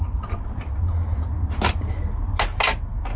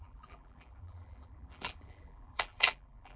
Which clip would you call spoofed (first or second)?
second